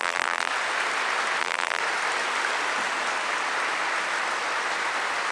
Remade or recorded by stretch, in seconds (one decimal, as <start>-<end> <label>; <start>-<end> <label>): 0.0-0.5 remade; 0.5-1.4 recorded; 1.4-1.8 remade; 1.8-5.3 recorded